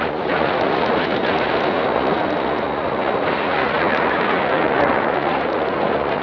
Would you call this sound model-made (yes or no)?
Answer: yes